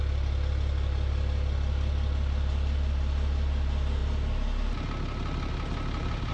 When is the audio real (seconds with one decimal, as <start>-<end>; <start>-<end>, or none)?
0.0-6.3